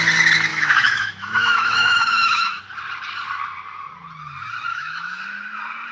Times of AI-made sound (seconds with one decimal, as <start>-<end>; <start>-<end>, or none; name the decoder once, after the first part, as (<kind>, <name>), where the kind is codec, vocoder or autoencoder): 0.5-2.6 (autoencoder, DAC-VAE); 4.7-5.2